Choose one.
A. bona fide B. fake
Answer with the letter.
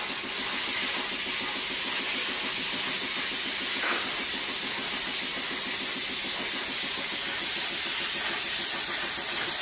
A